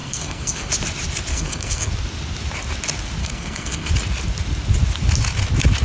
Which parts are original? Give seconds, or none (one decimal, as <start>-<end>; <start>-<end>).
0.7-1.3; 1.9-3.2; 3.9-5.8